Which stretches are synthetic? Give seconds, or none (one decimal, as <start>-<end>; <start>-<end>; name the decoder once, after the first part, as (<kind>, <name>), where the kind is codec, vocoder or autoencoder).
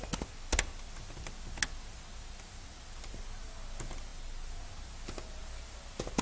none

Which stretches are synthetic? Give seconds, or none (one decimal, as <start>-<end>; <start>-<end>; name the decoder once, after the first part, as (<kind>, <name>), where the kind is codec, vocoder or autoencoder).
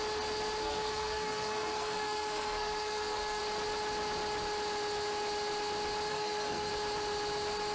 0.6-3.4 (codec, SNAC); 6.1-6.7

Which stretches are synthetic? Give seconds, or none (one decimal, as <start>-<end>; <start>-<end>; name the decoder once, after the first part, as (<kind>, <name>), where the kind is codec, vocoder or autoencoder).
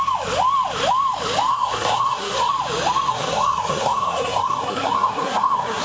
1.5-2.5 (codec, SNAC); 3.1-5.8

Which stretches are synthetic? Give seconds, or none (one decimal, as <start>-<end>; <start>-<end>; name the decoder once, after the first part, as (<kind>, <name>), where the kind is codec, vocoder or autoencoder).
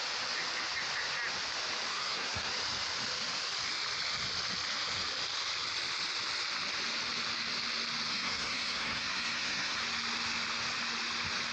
1.9-2.5 (codec, SNAC); 8.1-9.8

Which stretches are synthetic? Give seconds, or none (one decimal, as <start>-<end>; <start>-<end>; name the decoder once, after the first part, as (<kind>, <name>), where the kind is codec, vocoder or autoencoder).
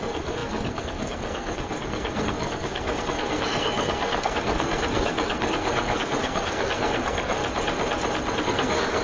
0.0-7.4 (codec, SNAC); 8.4-9.0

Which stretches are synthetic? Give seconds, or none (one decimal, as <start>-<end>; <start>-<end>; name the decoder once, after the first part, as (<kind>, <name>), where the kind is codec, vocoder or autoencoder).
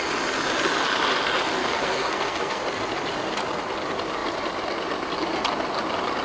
1.6-2.6 (codec, SNAC)